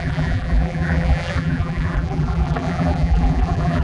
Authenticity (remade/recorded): remade